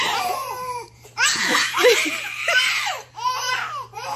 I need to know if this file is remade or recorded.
remade